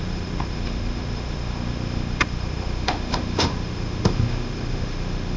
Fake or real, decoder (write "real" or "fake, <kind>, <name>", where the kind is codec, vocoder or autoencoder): fake, autoencoder, DAC-VAE